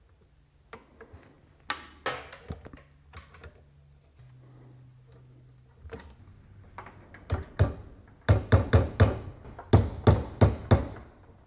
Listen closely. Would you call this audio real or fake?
real